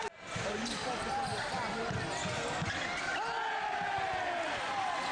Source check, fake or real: real